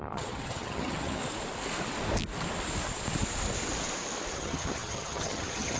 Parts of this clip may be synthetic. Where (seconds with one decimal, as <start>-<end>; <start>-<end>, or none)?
0.0-1.2; 4.3-5.8